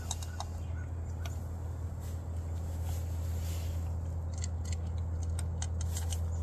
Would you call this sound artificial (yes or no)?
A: no